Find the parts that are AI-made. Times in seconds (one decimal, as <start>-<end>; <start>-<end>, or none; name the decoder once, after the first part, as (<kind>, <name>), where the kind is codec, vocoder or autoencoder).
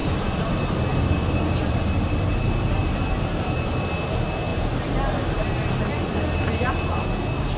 0.0-0.5 (vocoder, BigVGAN v2); 0.9-2.1; 2.8-3.8; 4.5-5.9